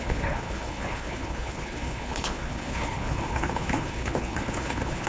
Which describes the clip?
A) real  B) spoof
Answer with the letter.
B